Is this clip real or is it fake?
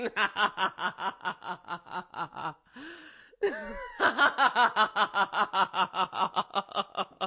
real